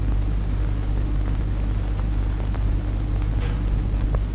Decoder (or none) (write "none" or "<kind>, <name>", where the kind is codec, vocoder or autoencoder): none